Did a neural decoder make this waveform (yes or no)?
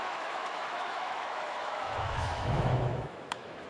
yes